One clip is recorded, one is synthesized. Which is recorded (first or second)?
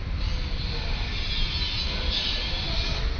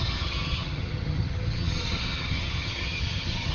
first